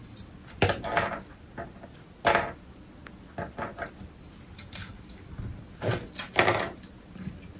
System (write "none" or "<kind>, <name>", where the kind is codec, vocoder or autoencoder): none